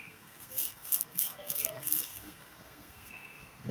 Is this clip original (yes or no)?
no